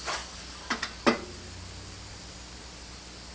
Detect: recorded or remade recorded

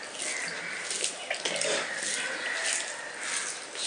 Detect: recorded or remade recorded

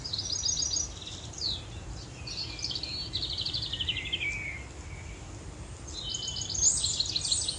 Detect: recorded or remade recorded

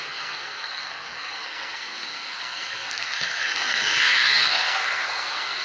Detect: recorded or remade remade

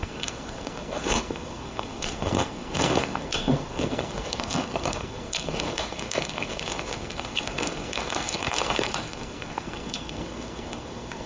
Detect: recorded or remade remade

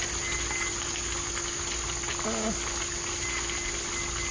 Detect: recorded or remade recorded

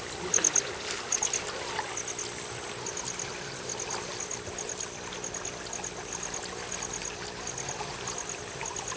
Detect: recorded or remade recorded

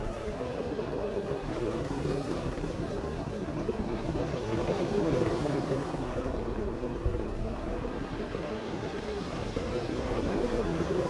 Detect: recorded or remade remade